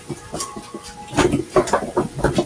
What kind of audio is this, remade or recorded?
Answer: recorded